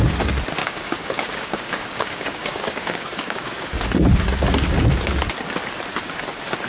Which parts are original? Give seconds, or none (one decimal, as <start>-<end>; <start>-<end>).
0.0-0.6; 3.7-6.7